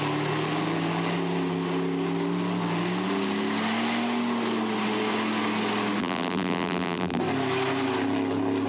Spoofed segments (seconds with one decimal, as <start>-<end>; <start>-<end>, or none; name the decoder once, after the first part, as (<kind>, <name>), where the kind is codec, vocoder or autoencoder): 6.0-7.2 (vocoder, BigVGAN v2)